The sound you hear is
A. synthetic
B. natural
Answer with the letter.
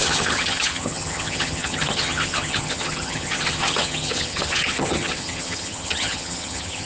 A